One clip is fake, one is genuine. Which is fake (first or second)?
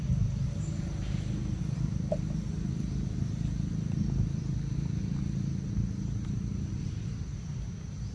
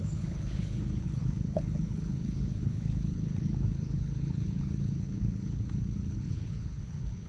second